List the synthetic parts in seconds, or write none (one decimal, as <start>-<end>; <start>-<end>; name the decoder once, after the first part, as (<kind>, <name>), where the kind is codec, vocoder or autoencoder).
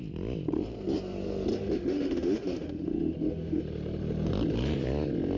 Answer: 1.5-3.6 (autoencoder, DAC-VAE)